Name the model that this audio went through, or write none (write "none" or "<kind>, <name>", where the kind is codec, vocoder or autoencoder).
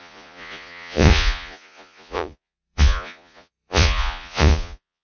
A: vocoder, Vocos